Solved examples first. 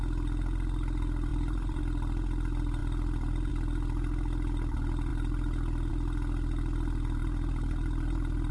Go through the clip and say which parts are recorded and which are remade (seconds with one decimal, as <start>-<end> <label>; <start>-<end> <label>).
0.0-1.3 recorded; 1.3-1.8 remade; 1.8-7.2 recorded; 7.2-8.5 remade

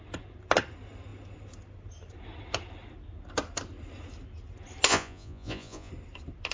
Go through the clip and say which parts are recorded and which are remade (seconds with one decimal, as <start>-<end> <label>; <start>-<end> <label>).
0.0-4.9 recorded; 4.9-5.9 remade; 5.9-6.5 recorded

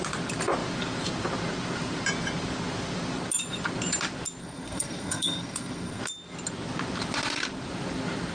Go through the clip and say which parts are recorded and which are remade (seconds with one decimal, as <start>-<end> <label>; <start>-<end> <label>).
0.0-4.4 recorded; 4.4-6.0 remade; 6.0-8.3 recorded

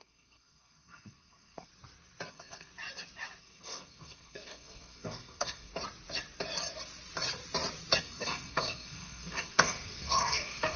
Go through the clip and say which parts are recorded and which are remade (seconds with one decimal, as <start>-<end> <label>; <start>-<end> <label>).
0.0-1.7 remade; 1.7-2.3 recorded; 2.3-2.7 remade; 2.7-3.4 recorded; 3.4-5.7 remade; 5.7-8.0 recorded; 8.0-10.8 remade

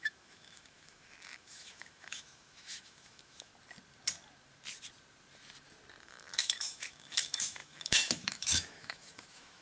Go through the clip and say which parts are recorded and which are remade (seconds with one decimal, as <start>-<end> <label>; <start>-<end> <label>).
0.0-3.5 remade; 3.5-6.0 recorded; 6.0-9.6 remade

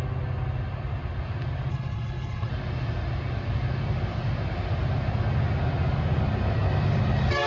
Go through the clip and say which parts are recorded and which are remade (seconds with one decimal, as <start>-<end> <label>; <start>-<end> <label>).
0.0-1.7 recorded; 1.7-2.5 remade; 2.5-7.5 recorded